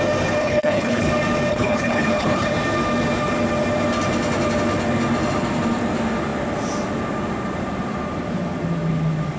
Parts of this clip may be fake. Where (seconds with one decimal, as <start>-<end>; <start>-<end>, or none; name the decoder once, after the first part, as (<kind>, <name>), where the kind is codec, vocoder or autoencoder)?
0.4-1.1 (codec, HILCodec); 1.5-2.5